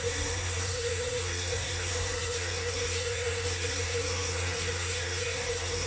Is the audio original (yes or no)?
no